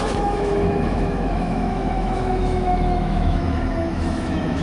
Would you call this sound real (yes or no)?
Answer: no